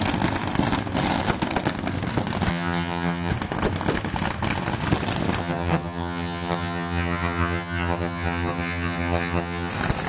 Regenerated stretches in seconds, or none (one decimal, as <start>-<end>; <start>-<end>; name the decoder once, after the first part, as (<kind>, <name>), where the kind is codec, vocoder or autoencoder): 2.5-3.3 (vocoder, HiFi-GAN); 5.4-9.7